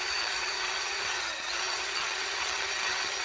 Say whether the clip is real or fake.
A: fake